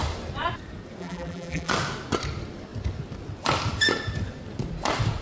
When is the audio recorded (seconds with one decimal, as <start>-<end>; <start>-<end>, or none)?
0.0-1.0; 1.7-5.2